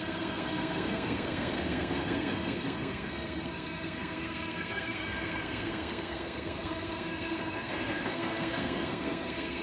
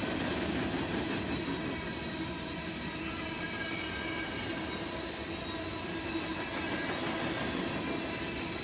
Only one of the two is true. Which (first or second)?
second